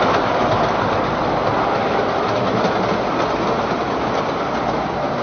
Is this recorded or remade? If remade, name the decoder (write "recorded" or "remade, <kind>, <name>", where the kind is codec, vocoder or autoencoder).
recorded